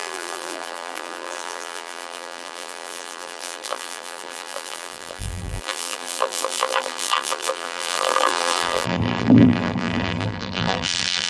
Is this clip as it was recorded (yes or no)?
no